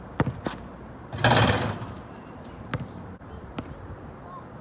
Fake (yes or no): no